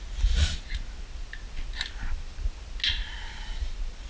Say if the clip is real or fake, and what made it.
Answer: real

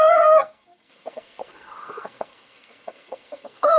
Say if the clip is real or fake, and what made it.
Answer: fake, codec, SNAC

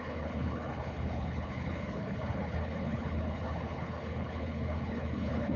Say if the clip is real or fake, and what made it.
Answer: fake, codec, HILCodec